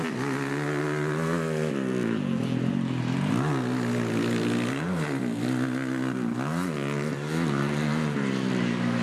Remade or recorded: recorded